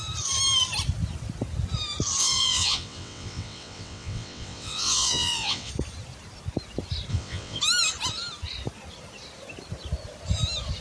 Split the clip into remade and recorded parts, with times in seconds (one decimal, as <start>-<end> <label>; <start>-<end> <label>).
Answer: 0.0-2.2 recorded; 2.2-5.7 remade; 5.7-7.1 recorded; 7.1-7.6 remade; 7.6-10.8 recorded